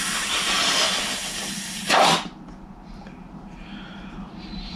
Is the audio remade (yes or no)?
no